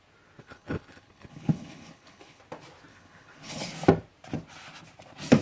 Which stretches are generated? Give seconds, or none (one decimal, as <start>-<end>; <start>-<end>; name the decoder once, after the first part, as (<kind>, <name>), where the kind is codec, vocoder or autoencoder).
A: 0.4-2.4 (codec, HILCodec); 2.9-3.7